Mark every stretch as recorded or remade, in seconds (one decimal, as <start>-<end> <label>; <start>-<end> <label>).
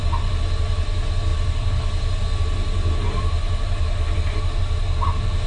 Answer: 0.0-5.5 recorded